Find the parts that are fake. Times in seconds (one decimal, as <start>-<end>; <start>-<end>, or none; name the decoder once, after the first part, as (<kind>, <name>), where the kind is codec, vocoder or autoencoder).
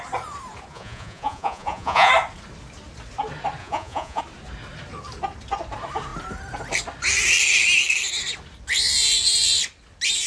0.7-2.1 (vocoder, Vocos); 3.6-4.2